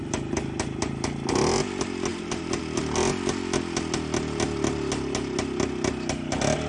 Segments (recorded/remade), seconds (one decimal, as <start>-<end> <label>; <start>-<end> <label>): 0.0-2.1 recorded; 2.1-2.6 remade; 2.6-6.7 recorded